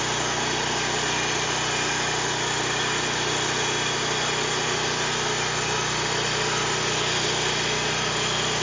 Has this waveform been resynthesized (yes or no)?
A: no